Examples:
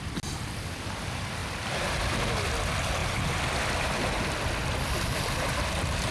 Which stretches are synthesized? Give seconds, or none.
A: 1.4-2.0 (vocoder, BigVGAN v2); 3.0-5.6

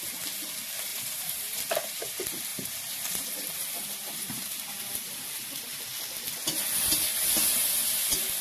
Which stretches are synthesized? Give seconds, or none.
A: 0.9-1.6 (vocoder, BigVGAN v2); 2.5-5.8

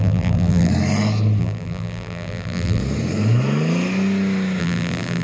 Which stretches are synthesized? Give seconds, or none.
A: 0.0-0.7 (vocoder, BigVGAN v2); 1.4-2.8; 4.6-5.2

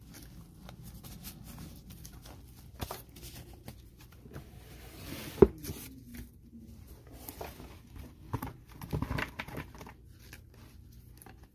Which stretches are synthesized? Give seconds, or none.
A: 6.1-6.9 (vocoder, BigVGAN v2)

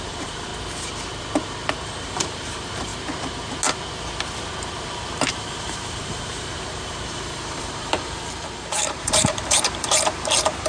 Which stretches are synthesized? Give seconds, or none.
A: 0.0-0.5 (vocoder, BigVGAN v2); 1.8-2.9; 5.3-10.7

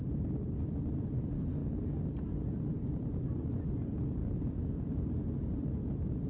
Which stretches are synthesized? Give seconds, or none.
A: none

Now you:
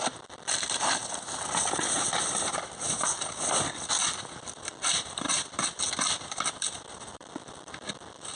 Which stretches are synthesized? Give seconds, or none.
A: 0.0-1.0 (vocoder, BigVGAN v2); 1.8-8.4

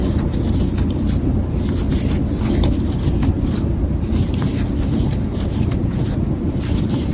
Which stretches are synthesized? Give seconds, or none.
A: 0.0-7.1 (vocoder, BigVGAN v2)